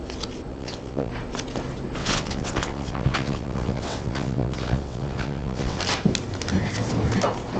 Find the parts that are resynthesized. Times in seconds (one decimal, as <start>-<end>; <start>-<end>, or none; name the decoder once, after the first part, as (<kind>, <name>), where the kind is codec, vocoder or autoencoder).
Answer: 0.5-1.1 (vocoder, WaveNeXt); 2.0-5.8